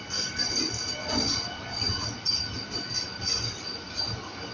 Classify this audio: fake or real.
real